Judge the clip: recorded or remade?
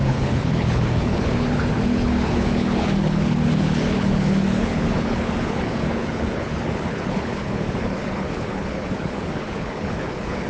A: remade